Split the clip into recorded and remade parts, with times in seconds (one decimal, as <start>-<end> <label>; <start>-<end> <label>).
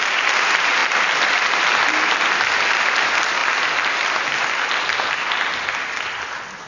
0.0-6.7 recorded